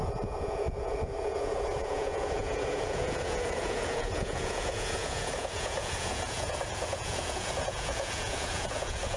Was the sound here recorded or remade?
remade